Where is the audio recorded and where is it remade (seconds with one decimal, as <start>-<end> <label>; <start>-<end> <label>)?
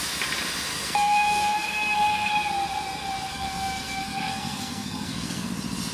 0.0-0.7 recorded; 0.7-2.3 remade; 2.3-3.3 recorded; 3.3-5.5 remade; 5.5-5.9 recorded